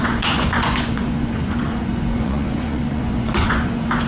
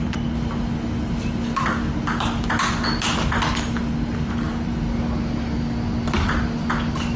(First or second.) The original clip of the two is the second